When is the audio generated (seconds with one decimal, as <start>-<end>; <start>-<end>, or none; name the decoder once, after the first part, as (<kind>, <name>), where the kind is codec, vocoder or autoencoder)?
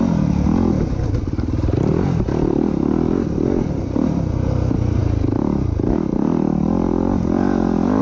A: none